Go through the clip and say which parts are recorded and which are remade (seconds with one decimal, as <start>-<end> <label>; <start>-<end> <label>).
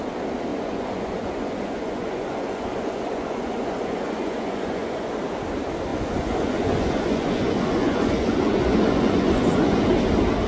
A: 0.0-0.5 recorded; 0.5-5.1 remade; 5.1-5.9 recorded; 5.9-9.8 remade; 9.8-10.5 recorded